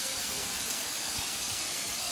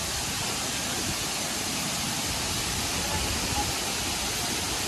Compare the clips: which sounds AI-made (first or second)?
first